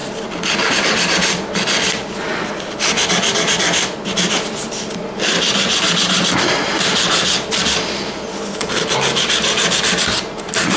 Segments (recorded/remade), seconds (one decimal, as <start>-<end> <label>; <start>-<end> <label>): 0.0-10.8 recorded